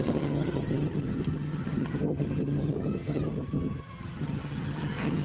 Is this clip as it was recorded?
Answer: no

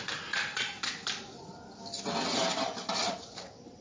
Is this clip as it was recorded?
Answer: yes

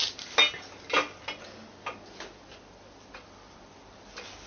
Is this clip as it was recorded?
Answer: yes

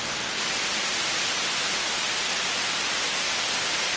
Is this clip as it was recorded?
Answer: yes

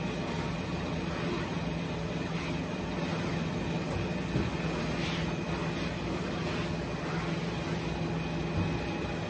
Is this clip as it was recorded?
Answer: yes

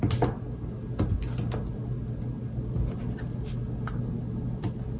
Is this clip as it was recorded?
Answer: yes